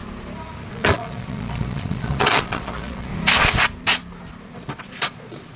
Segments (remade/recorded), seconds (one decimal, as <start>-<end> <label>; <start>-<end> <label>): 0.0-0.7 recorded; 0.7-3.1 remade; 3.1-4.8 recorded; 4.8-5.6 remade